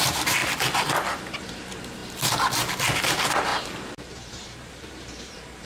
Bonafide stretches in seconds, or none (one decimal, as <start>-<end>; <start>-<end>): 0.4-1.4; 2.0-3.0